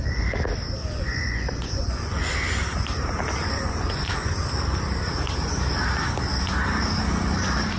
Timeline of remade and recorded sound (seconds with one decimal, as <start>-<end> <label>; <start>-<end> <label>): 0.0-0.8 recorded; 0.8-2.3 remade; 2.3-3.4 recorded; 3.4-4.3 remade; 4.3-7.8 recorded